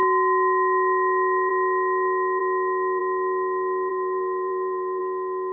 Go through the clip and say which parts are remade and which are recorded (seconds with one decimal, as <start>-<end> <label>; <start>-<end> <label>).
0.0-3.9 recorded; 3.9-5.0 remade; 5.0-5.5 recorded